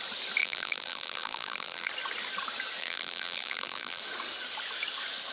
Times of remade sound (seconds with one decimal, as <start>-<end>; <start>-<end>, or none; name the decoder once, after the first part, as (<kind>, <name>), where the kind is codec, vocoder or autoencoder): 0.4-1.9 (vocoder, BigVGAN v2); 2.8-4.0